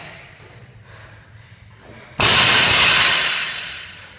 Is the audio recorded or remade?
recorded